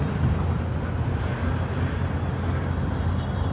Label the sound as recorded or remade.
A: recorded